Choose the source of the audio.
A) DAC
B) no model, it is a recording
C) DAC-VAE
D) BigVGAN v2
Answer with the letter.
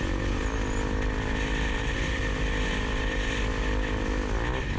B